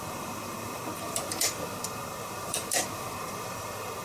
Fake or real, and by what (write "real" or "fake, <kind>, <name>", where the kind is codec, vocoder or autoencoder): fake, vocoder, BigVGAN v2